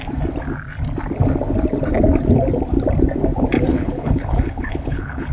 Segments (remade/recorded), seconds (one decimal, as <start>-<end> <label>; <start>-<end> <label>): 0.0-3.7 recorded; 3.7-5.3 remade